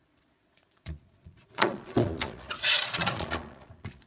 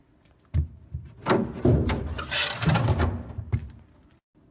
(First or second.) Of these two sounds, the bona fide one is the second